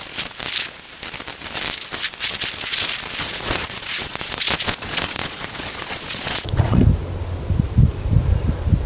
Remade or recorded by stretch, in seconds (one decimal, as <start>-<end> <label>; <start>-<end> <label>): 0.0-3.2 recorded; 3.2-6.8 remade; 6.8-8.9 recorded